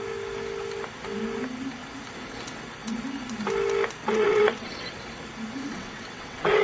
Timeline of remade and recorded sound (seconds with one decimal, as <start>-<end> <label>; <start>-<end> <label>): 0.0-4.0 recorded; 4.0-4.9 remade; 4.9-5.7 recorded; 5.7-6.6 remade